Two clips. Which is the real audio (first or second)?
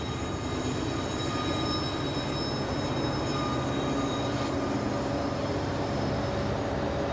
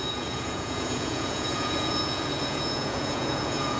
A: first